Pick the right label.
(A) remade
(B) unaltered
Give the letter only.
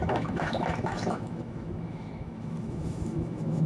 A